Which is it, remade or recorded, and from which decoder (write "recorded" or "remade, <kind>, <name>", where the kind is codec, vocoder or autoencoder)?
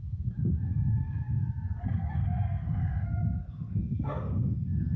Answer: remade, codec, SNAC